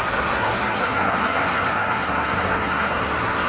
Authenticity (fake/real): fake